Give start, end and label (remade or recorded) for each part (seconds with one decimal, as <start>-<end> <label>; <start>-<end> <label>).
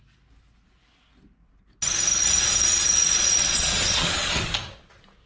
0.0-2.2 recorded; 2.2-4.3 remade; 4.3-5.3 recorded